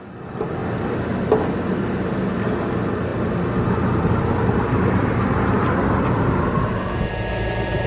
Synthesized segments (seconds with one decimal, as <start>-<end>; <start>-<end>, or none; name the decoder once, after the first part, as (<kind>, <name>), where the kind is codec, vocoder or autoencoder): none